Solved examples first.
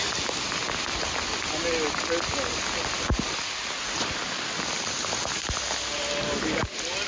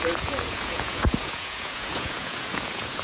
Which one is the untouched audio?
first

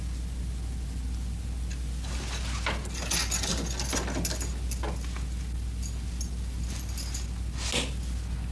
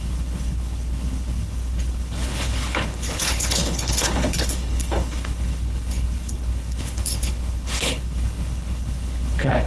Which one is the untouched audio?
first